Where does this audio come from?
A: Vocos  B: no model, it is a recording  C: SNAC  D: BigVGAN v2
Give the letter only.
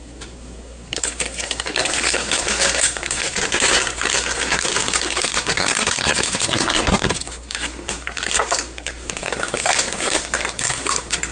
C